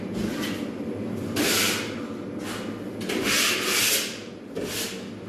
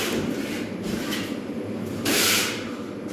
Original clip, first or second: first